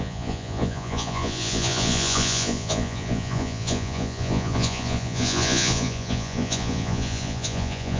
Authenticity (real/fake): fake